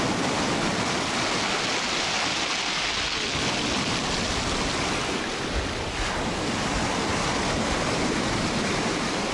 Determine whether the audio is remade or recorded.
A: recorded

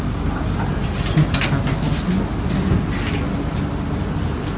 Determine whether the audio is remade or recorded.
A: recorded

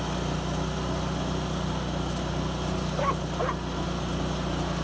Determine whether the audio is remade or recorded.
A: recorded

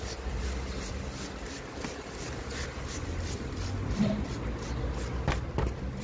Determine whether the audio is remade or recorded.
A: recorded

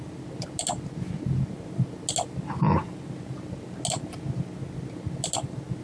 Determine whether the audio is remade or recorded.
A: recorded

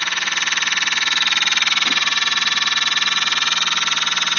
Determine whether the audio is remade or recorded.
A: recorded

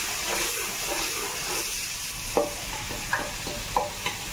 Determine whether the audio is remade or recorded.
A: recorded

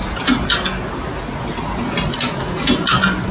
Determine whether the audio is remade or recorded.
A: recorded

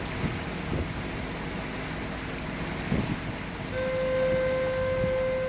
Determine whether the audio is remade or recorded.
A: recorded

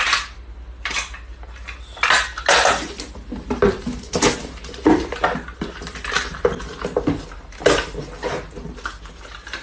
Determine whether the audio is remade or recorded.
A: recorded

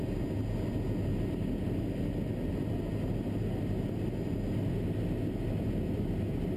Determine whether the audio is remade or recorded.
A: recorded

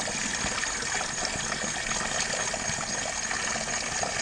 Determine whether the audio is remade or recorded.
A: recorded